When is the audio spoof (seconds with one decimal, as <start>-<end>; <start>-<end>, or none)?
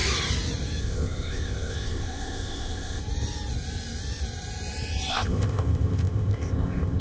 0.8-3.0; 5.1-7.0